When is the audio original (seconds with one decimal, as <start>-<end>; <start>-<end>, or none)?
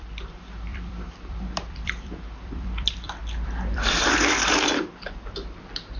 none